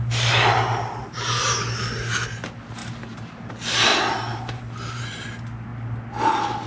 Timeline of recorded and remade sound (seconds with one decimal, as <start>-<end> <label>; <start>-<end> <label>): 0.0-1.0 recorded; 1.0-1.6 remade; 1.6-2.8 recorded; 2.8-3.5 remade; 3.5-3.9 recorded; 3.9-5.1 remade; 5.1-6.7 recorded